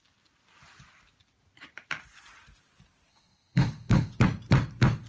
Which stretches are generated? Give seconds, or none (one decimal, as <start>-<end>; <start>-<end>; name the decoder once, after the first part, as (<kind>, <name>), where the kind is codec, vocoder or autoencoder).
3.1-4.2 (codec, HILCodec)